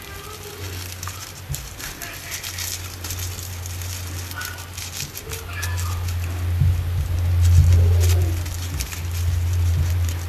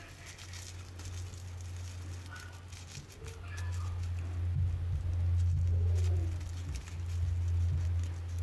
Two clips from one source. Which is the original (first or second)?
second